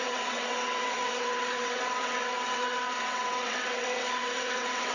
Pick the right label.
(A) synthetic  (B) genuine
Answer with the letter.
A